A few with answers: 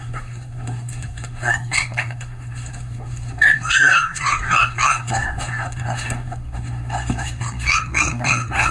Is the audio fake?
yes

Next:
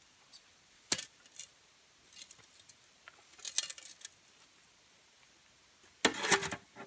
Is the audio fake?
no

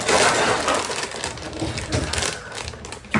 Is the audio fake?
no